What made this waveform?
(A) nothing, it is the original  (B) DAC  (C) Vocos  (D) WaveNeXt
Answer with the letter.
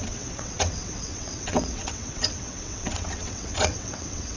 D